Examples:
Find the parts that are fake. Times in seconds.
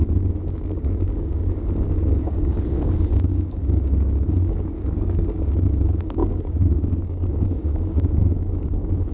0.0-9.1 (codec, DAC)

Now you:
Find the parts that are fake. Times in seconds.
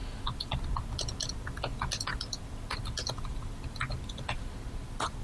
none